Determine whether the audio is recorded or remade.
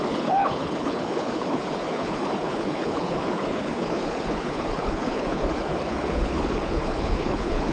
remade